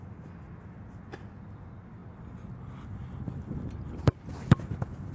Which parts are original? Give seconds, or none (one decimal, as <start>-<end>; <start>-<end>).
0.0-5.1